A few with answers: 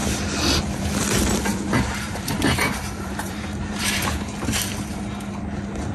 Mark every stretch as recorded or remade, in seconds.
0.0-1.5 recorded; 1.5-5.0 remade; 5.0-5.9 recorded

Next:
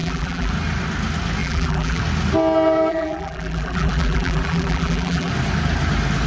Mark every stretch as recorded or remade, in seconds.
0.0-0.5 remade; 0.5-1.4 recorded; 1.4-2.0 remade; 2.0-2.9 recorded; 2.9-5.3 remade; 5.3-6.3 recorded